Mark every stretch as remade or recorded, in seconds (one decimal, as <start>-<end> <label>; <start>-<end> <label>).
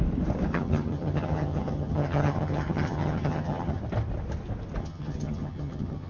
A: 0.0-0.5 recorded; 0.5-3.8 remade; 3.8-4.8 recorded; 4.8-6.1 remade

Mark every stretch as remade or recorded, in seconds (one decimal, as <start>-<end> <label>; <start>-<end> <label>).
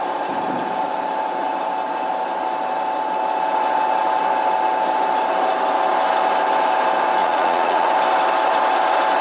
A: 0.0-7.2 recorded; 7.2-7.9 remade; 7.9-9.2 recorded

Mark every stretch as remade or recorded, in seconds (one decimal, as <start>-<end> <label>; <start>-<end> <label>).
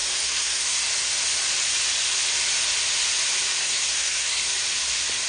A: 0.0-0.8 remade; 0.8-3.6 recorded; 3.6-4.5 remade; 4.5-5.3 recorded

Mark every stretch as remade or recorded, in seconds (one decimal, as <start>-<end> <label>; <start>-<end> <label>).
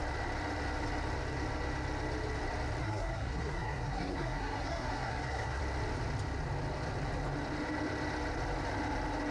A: 0.0-2.8 recorded; 2.8-5.6 remade; 5.6-9.3 recorded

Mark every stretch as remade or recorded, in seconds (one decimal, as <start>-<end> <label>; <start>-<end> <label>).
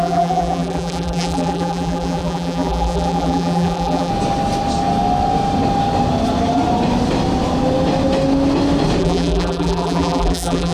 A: 0.0-4.1 remade; 4.1-9.0 recorded; 9.0-10.7 remade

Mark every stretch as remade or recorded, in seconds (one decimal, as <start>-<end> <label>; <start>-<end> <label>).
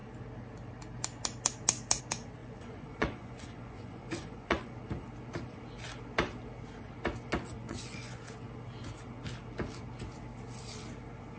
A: 0.0-2.4 recorded; 2.4-4.7 remade; 4.7-7.6 recorded; 7.6-8.2 remade; 8.2-11.4 recorded